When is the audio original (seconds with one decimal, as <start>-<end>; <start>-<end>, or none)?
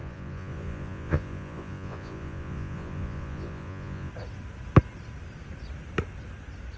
4.1-6.8